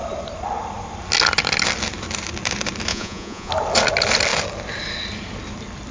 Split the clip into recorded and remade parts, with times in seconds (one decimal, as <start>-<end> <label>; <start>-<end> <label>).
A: 0.0-2.9 recorded; 2.9-3.5 remade; 3.5-5.9 recorded